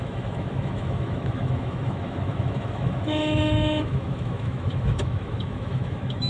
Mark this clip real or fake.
fake